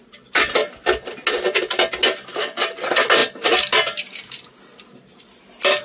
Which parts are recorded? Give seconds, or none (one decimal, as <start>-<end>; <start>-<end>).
0.0-5.8